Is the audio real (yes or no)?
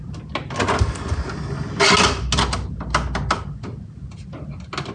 yes